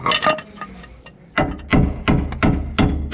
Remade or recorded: recorded